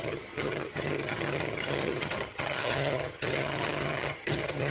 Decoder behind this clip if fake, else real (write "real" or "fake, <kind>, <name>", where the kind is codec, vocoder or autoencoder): fake, vocoder, HiFi-GAN